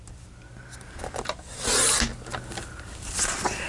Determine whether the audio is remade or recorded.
recorded